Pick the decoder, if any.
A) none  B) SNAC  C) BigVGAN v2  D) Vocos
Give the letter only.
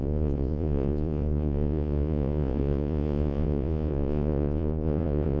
D